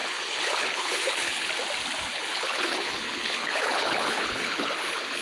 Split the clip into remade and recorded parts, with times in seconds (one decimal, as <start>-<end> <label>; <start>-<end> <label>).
0.0-1.5 remade; 1.5-2.1 recorded; 2.1-5.2 remade

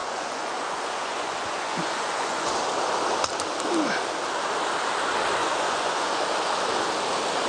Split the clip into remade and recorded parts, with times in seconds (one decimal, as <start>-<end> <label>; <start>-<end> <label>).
0.0-2.5 remade; 2.5-5.4 recorded; 5.4-6.2 remade; 6.2-7.5 recorded